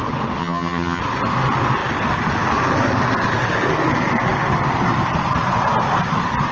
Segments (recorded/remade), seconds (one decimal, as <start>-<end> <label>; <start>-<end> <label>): 0.0-0.4 recorded; 0.4-1.0 remade; 1.0-6.5 recorded

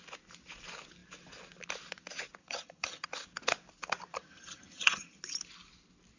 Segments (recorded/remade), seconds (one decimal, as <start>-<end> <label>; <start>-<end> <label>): 0.0-2.4 recorded; 2.4-3.1 remade; 3.1-4.1 recorded; 4.1-5.2 remade; 5.2-6.2 recorded

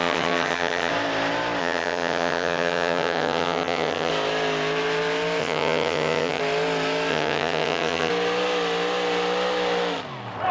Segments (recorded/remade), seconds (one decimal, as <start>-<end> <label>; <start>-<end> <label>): 0.0-0.9 remade; 0.9-1.6 recorded; 1.6-4.1 remade; 4.1-5.4 recorded; 5.4-6.4 remade; 6.4-7.1 recorded; 7.1-8.1 remade; 8.1-10.5 recorded

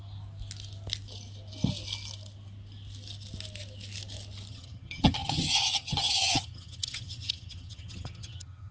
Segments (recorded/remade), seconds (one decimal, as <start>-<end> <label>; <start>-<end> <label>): 0.0-4.5 recorded; 4.5-8.7 remade